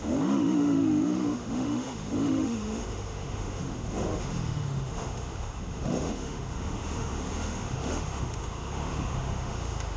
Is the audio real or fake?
fake